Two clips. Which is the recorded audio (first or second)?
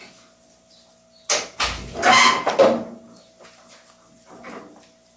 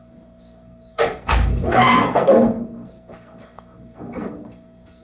first